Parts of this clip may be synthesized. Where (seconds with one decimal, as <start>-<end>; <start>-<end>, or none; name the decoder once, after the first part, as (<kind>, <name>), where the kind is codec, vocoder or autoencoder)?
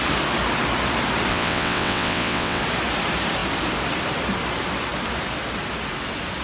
1.3-2.6 (vocoder, WaveNeXt)